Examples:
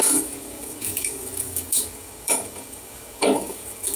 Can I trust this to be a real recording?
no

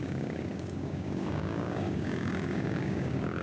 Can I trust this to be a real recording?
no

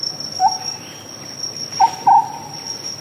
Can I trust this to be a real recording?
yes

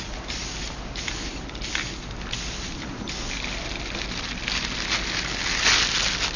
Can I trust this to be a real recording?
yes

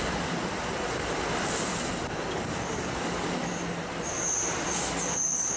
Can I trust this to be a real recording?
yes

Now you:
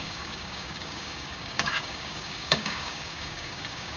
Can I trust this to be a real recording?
no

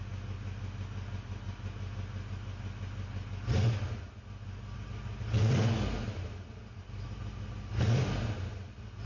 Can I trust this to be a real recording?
yes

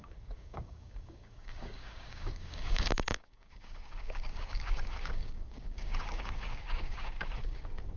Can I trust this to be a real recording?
no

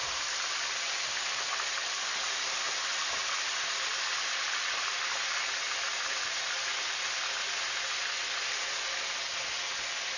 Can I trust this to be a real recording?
yes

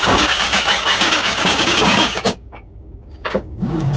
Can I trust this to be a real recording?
no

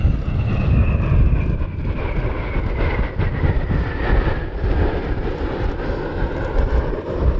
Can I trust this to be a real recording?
yes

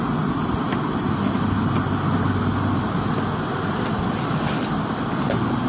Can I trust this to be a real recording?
yes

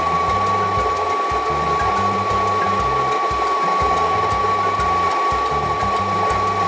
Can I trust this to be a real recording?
yes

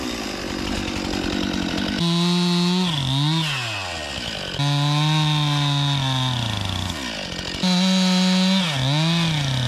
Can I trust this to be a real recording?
yes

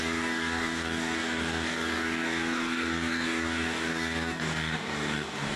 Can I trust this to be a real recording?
no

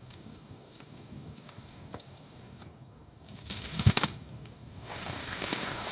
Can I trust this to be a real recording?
no